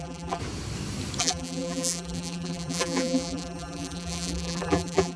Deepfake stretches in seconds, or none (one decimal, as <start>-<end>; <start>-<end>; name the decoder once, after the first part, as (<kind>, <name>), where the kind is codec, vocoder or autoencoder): 0.0-0.4 (vocoder, BigVGAN v2); 1.2-5.2